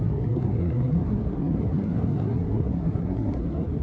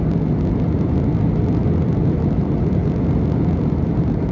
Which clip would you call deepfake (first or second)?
first